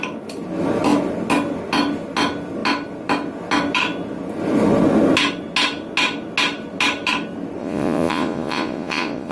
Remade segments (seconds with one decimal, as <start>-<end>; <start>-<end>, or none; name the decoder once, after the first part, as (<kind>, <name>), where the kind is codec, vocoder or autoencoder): 7.6-9.3 (vocoder, Vocos)